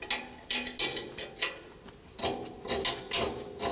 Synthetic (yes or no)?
no